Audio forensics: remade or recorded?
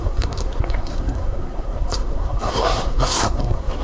remade